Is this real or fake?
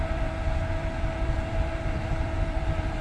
fake